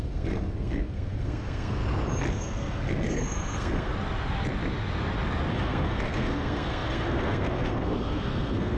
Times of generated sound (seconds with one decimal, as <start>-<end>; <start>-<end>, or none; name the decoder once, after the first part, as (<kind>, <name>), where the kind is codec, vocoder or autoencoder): 0.0-1.8 (codec, SNAC); 2.3-3.9; 5.5-8.8